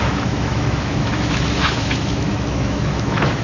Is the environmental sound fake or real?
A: fake